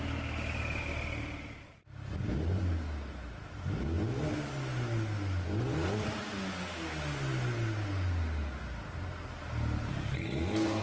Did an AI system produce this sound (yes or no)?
no